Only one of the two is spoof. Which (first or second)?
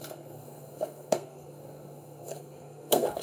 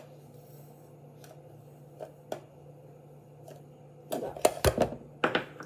first